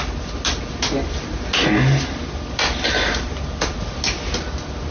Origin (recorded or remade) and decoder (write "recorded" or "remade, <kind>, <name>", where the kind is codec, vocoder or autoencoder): recorded